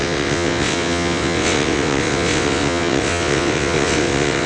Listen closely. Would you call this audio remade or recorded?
remade